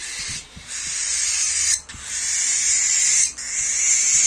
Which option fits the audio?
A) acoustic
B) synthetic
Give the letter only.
A